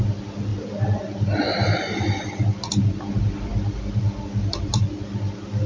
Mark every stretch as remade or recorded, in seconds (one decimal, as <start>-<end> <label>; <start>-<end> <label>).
0.0-5.7 recorded